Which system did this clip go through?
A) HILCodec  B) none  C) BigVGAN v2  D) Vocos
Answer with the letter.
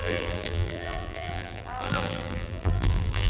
C